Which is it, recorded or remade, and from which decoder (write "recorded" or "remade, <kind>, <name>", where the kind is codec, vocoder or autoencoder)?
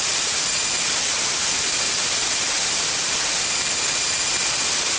remade, vocoder, BigVGAN v2